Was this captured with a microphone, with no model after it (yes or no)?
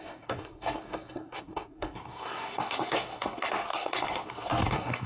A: no